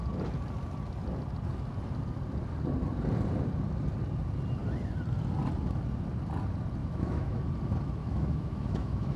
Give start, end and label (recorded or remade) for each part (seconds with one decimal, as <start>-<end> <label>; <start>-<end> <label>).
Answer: 0.0-6.8 recorded; 6.8-7.4 remade; 7.4-8.0 recorded; 8.0-9.2 remade